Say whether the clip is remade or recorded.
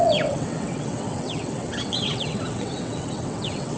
remade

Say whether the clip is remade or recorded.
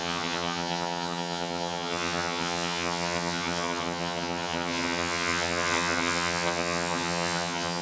remade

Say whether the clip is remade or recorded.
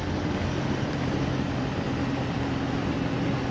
recorded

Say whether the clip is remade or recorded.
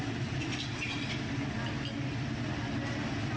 recorded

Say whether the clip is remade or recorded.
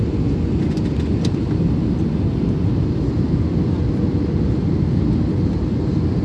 recorded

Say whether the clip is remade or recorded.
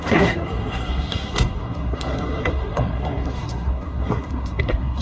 remade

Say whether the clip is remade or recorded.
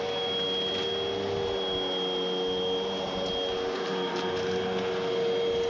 recorded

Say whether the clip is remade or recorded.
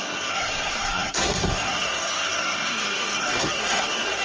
remade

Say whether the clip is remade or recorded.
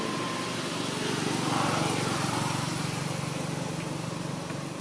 recorded